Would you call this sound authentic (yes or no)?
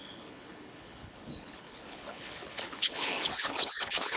no